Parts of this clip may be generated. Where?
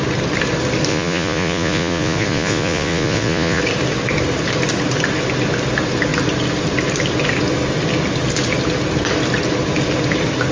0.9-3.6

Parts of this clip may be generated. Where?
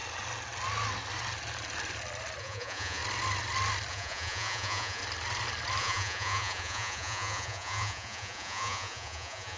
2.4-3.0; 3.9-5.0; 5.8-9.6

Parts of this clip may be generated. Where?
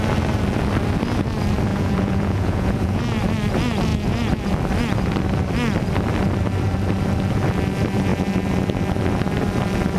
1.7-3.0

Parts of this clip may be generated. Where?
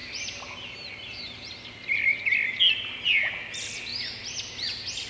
none